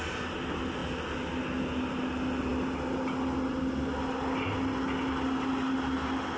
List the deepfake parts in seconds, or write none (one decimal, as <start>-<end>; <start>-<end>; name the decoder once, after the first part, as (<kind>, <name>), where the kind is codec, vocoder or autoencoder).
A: none

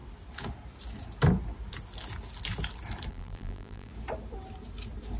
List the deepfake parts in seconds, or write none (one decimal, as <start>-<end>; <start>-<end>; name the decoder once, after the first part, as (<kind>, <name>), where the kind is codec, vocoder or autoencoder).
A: 3.1-3.9 (vocoder, BigVGAN v2)

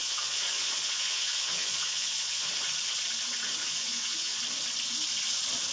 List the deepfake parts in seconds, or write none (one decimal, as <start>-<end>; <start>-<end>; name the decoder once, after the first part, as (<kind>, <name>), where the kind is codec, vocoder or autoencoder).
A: 0.0-2.5 (vocoder, Vocos); 3.6-4.4

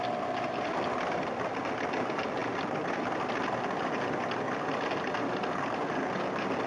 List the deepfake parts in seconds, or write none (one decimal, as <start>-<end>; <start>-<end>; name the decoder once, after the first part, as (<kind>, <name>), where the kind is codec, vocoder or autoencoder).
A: none